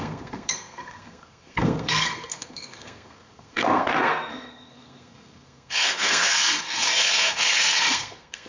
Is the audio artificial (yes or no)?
yes